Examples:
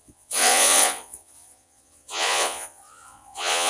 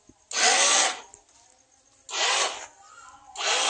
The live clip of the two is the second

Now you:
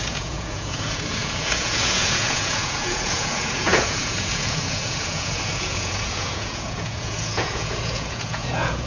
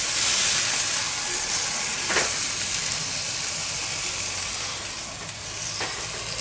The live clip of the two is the second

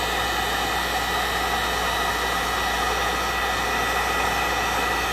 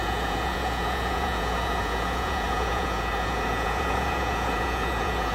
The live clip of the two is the first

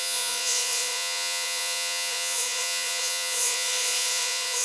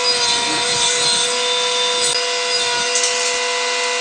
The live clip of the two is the second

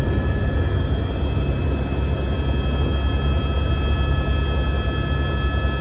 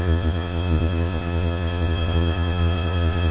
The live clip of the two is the first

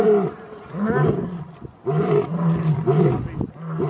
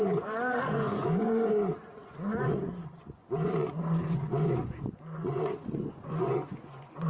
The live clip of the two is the first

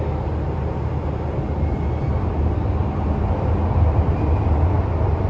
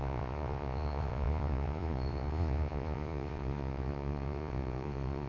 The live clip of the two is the first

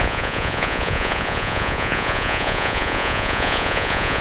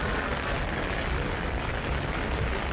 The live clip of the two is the second